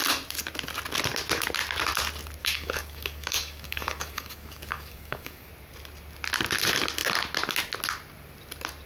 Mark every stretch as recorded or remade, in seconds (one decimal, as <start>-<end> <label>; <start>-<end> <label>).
0.0-2.4 recorded; 2.4-5.5 remade; 5.5-8.9 recorded